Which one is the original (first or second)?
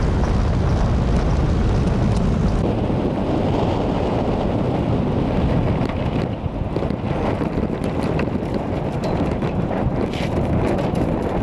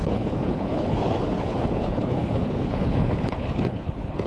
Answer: first